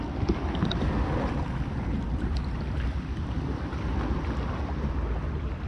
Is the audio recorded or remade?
recorded